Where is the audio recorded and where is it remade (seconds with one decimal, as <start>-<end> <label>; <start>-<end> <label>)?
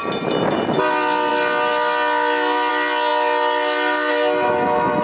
0.0-5.0 recorded